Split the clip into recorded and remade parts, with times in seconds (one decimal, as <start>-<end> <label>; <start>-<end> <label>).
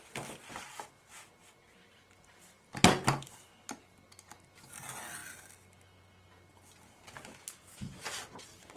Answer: 0.0-8.8 recorded